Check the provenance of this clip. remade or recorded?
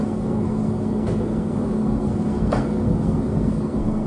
remade